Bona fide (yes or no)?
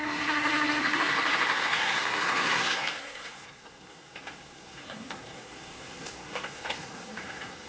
no